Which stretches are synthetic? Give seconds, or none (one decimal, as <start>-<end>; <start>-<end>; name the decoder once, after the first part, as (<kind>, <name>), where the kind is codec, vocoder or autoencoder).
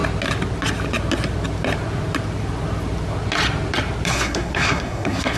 4.1-5.4 (codec, SNAC)